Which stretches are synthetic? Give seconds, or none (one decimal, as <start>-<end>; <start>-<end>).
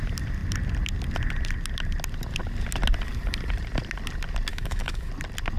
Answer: 4.5-5.1